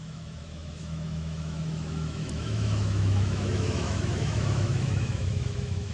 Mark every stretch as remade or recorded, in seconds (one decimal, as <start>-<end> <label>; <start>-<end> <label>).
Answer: 0.0-5.9 remade